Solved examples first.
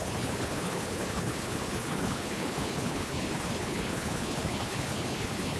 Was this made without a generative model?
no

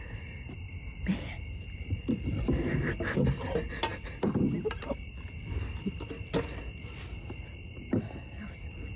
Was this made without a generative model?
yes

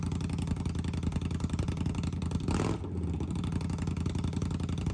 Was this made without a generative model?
yes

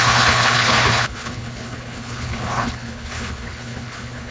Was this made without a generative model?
no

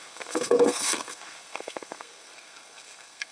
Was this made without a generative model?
no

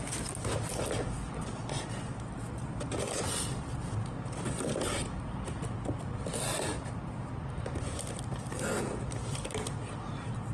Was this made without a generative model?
yes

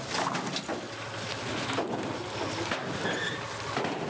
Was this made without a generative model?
yes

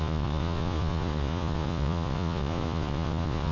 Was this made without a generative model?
no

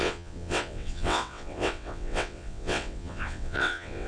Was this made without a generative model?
no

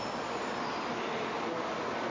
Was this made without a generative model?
yes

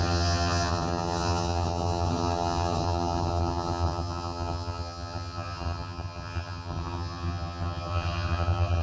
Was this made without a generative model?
no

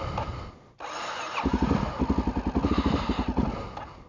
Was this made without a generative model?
yes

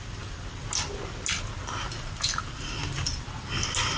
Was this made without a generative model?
yes